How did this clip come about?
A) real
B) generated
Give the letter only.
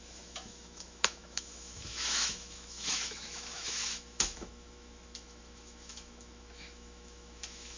B